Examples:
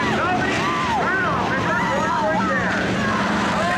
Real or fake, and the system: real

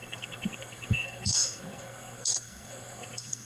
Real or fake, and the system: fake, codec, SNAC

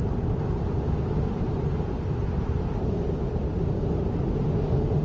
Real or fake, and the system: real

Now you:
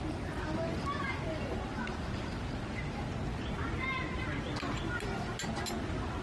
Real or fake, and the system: real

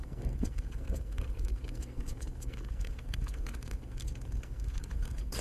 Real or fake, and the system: fake, codec, SNAC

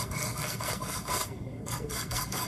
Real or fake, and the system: fake, codec, SNAC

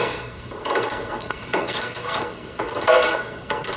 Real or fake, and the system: fake, codec, SNAC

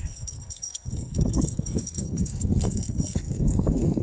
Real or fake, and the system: fake, codec, SNAC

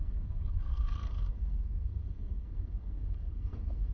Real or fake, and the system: fake, codec, SNAC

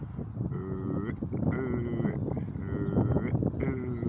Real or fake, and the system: real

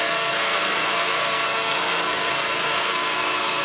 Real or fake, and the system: fake, codec, SNAC